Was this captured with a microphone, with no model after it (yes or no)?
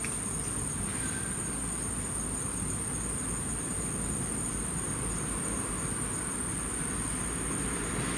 yes